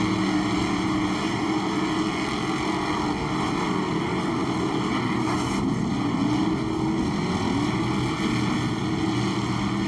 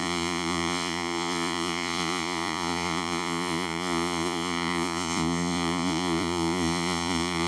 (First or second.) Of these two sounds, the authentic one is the first